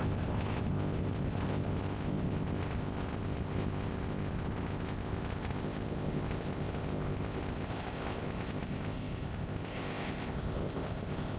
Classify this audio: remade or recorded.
remade